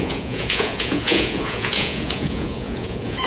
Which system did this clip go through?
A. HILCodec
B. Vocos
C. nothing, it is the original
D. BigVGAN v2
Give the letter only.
B